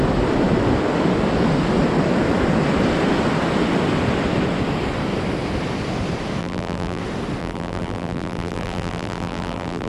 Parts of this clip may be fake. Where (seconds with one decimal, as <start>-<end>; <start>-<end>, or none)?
6.4-7.0; 7.4-9.9